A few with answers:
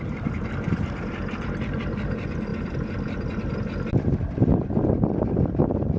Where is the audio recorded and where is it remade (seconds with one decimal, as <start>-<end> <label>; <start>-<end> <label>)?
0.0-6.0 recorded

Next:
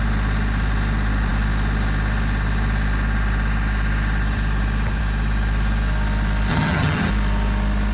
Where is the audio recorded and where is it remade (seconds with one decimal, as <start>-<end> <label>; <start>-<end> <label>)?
0.0-6.5 recorded; 6.5-7.1 remade; 7.1-7.9 recorded

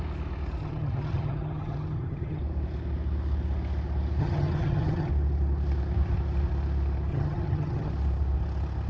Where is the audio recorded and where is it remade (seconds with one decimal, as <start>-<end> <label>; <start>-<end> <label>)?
0.0-0.6 recorded; 0.6-2.4 remade; 2.4-4.2 recorded; 4.2-5.1 remade; 5.1-7.1 recorded; 7.1-7.9 remade; 7.9-8.9 recorded

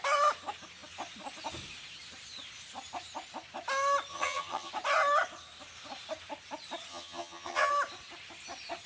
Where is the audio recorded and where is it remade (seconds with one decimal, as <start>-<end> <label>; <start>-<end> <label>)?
0.0-4.1 recorded; 4.1-4.7 remade; 4.7-6.9 recorded; 6.9-7.7 remade; 7.7-8.9 recorded

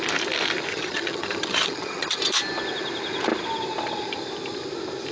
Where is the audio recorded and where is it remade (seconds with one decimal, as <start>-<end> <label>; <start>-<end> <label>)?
0.0-0.7 recorded; 0.7-2.2 remade; 2.2-5.1 recorded

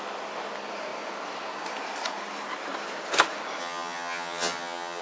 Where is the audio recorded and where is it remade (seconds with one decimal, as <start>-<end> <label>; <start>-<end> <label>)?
0.0-3.6 recorded; 3.6-5.0 remade